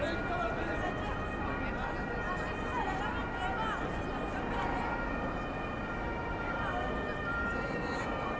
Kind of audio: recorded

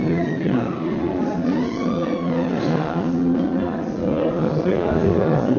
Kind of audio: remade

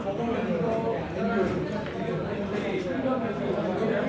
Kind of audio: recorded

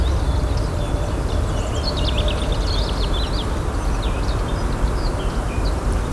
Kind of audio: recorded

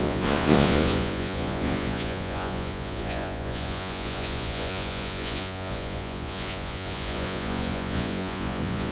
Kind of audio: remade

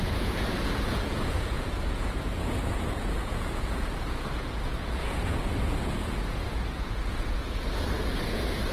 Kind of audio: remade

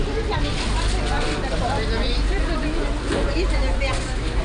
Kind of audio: recorded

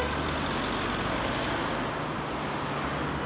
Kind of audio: recorded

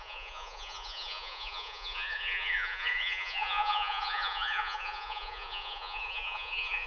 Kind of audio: remade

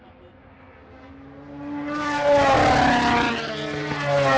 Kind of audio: recorded